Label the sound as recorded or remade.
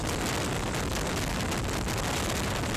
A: recorded